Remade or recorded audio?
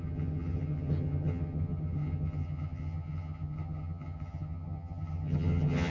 remade